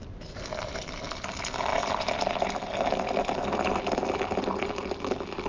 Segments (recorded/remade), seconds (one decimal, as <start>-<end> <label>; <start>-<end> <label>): 0.0-5.5 recorded